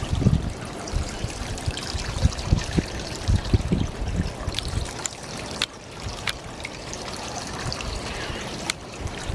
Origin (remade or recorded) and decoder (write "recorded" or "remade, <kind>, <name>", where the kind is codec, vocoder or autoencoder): remade, vocoder, BigVGAN v2